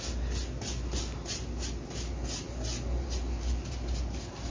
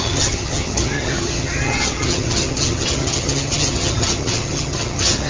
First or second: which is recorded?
first